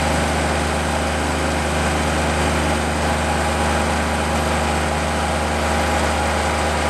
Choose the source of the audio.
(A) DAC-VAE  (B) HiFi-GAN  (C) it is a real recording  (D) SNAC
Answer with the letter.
C